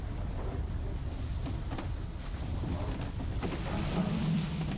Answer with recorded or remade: recorded